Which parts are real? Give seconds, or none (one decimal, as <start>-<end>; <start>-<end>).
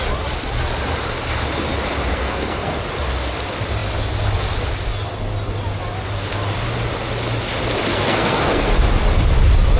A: 0.0-2.1; 2.8-7.9; 8.7-9.8